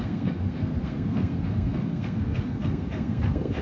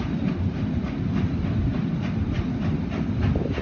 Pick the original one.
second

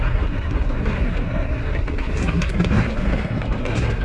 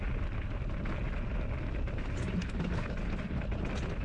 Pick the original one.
second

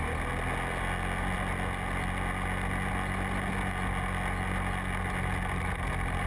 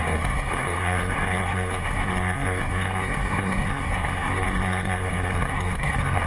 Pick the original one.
first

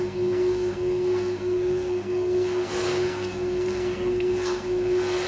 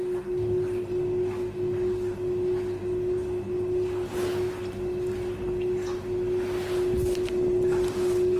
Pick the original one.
second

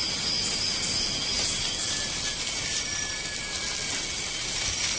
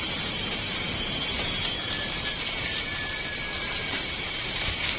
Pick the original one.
first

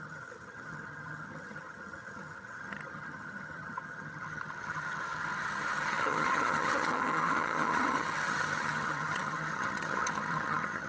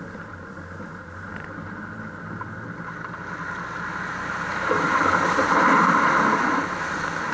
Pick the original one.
second